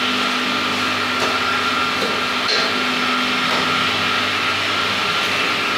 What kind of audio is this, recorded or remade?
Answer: recorded